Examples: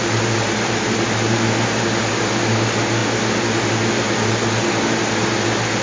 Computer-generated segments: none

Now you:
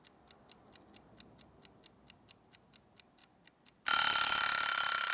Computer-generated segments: none

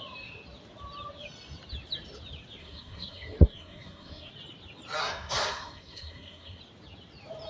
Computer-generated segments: 2.6-4.3 (codec, SNAC); 5.0-6.6

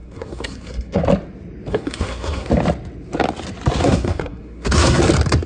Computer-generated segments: 0.0-1.0 (codec, SNAC); 1.7-2.5; 3.8-5.0